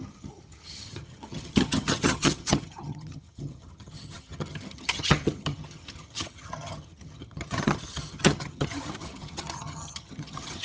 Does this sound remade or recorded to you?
remade